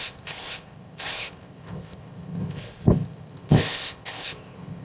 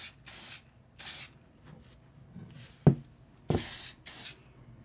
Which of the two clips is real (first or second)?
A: second